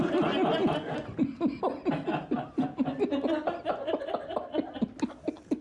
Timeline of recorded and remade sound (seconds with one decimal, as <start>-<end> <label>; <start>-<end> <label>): 0.0-5.6 recorded